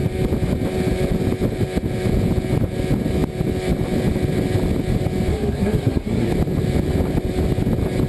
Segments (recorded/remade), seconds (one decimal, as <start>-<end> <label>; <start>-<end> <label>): 0.0-5.3 recorded; 5.3-6.3 remade; 6.3-8.1 recorded